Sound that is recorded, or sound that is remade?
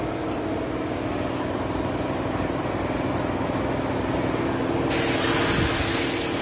recorded